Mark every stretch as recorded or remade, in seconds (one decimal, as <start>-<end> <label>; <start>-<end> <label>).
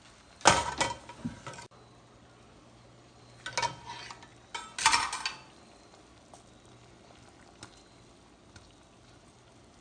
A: 0.0-9.8 recorded